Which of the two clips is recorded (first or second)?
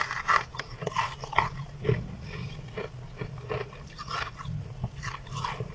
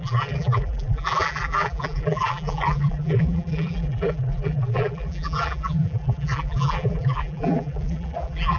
first